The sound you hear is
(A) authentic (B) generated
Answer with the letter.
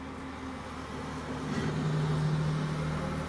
A